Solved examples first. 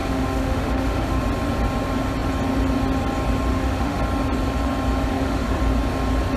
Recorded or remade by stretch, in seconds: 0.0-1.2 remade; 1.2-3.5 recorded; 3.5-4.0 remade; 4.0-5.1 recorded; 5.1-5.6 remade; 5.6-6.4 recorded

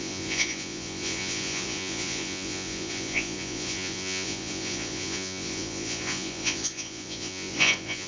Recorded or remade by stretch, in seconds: 0.0-8.1 remade

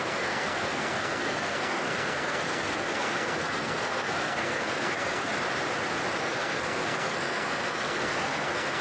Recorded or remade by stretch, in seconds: 0.0-5.3 remade; 5.3-6.2 recorded; 6.2-8.8 remade

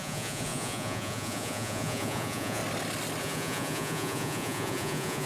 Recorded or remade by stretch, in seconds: 0.0-2.6 remade; 2.6-3.2 recorded; 3.2-5.3 remade

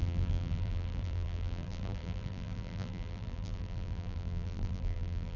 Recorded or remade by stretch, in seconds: 0.0-5.4 remade

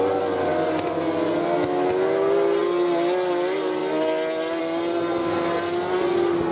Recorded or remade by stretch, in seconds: 0.0-6.5 recorded

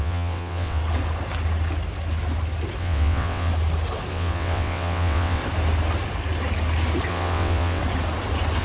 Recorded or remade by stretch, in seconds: 0.0-0.8 remade; 0.8-2.8 recorded; 2.8-3.5 remade; 3.5-4.1 recorded; 4.1-5.4 remade; 5.4-7.1 recorded; 7.1-7.8 remade; 7.8-8.6 recorded

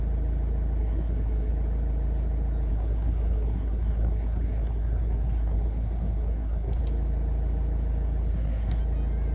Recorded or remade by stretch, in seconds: 0.0-0.8 recorded; 0.8-1.5 remade; 1.5-2.7 recorded; 2.7-6.8 remade; 6.8-8.3 recorded; 8.3-8.8 remade; 8.8-9.3 recorded